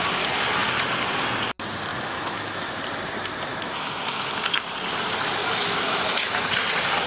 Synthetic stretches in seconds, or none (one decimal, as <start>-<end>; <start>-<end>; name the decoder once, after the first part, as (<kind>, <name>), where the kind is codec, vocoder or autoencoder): 1.9-2.8 (autoencoder, DAC-VAE); 3.5-4.2; 5.4-6.5